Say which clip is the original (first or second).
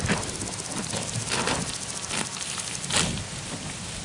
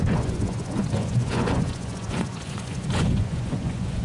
first